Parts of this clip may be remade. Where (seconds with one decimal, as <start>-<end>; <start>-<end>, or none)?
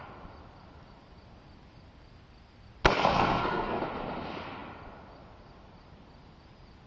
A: 3.1-3.8